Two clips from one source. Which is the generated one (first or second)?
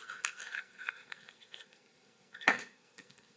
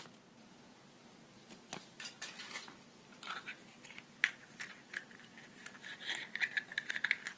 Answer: first